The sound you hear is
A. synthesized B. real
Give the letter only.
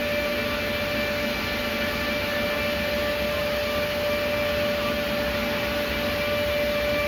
B